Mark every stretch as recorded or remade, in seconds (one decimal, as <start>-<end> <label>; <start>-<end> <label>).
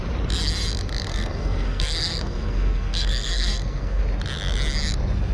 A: 0.0-1.1 recorded; 1.1-4.0 remade; 4.0-5.3 recorded